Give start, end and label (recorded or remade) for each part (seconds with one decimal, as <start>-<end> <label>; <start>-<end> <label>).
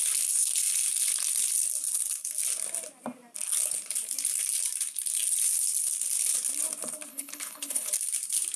0.0-7.1 recorded; 7.1-7.9 remade; 7.9-8.6 recorded